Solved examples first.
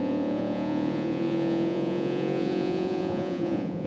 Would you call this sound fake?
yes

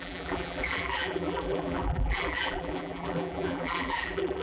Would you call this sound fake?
yes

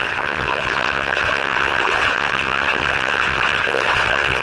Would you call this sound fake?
yes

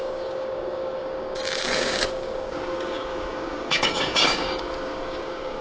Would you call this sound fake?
yes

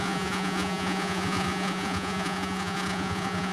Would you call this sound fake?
yes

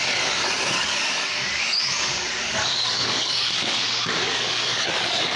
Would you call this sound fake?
yes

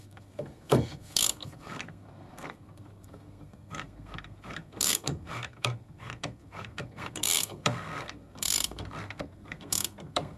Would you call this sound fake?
yes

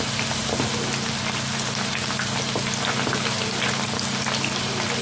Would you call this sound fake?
no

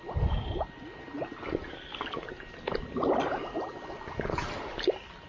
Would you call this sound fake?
no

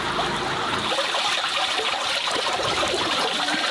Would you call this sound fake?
no